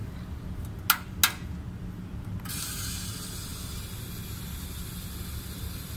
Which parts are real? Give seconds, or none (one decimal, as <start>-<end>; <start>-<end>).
0.0-6.0